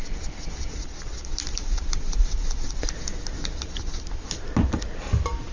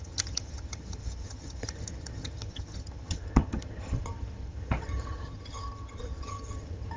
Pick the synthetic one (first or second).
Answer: second